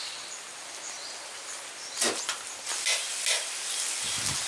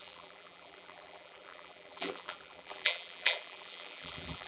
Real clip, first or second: first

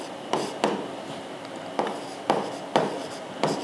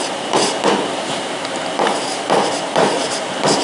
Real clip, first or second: first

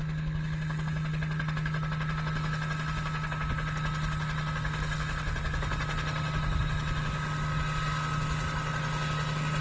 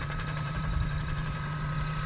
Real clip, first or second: first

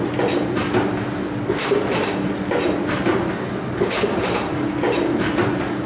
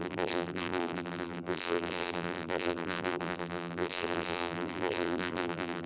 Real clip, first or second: first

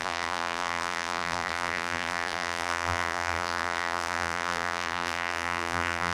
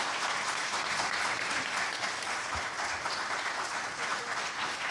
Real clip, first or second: second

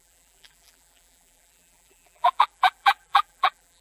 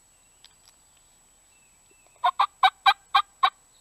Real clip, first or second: second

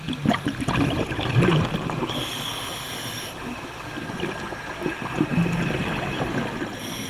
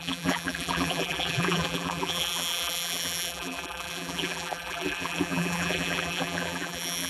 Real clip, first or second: first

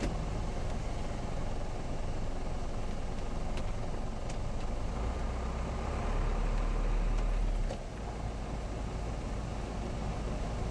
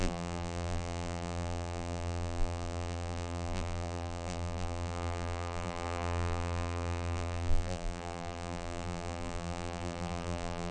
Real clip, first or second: first